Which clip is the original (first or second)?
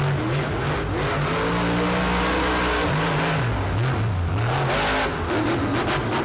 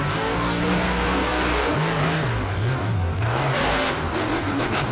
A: first